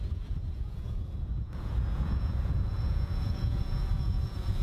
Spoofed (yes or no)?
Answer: yes